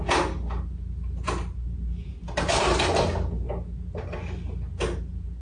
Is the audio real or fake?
real